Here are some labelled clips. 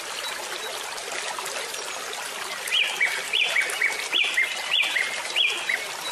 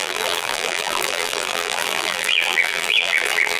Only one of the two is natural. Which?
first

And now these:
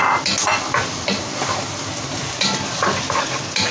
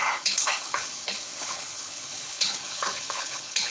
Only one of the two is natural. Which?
first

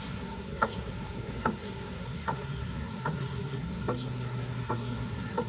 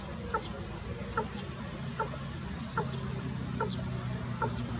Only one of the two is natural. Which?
second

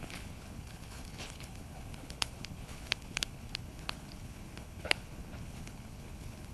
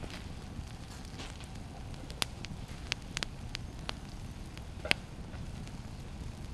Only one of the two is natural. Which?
second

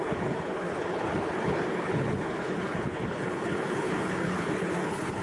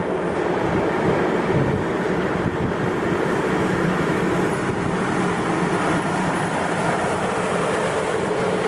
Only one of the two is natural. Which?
second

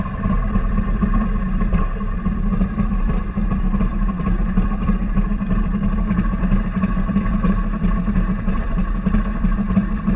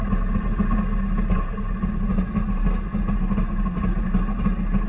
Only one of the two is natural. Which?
second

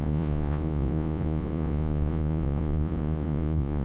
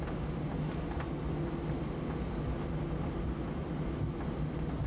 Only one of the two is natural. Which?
second